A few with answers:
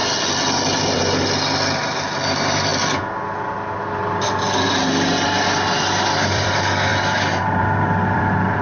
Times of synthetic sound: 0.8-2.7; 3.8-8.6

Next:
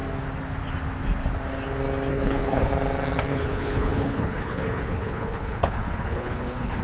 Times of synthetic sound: 2.1-2.7; 3.3-6.8